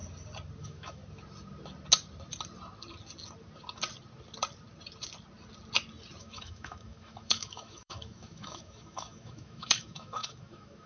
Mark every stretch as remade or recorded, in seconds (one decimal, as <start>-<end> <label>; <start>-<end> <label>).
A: 0.0-0.6 recorded; 0.6-1.0 remade; 1.0-6.2 recorded; 6.2-10.9 remade